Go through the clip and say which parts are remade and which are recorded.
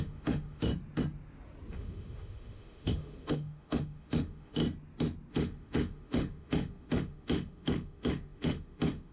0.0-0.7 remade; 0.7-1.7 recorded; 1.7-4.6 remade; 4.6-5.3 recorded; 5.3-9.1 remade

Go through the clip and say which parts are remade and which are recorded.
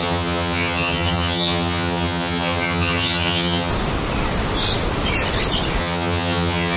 0.0-3.7 remade; 3.7-5.8 recorded; 5.8-6.8 remade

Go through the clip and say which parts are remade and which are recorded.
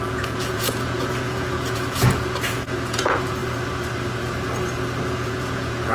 0.0-3.4 remade; 3.4-5.1 recorded; 5.1-5.9 remade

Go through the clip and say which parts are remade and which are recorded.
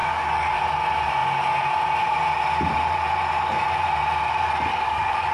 0.0-0.5 remade; 0.5-4.7 recorded; 4.7-5.3 remade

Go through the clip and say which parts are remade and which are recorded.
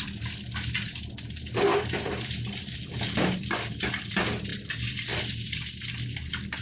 0.0-1.7 recorded; 1.7-3.0 remade; 3.0-6.6 recorded